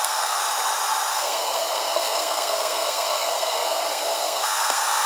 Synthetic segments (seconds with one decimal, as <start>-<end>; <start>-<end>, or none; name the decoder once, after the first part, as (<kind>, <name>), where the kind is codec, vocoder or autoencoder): 0.0-0.4 (codec, SNAC); 1.1-5.1